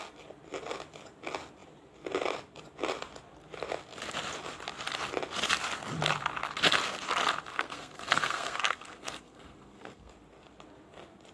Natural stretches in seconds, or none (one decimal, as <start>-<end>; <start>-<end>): 0.0-7.5; 10.1-11.3